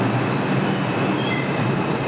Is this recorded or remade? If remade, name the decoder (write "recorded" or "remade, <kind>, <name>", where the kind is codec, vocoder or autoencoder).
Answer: recorded